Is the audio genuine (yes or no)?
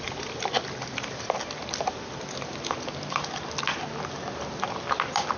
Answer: yes